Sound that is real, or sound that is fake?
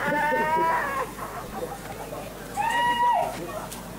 real